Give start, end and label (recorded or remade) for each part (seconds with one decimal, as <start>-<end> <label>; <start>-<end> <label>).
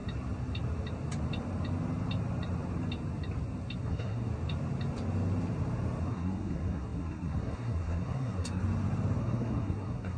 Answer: 0.0-3.8 recorded; 3.8-4.3 remade; 4.3-6.0 recorded; 6.0-8.6 remade; 8.6-9.2 recorded; 9.2-10.2 remade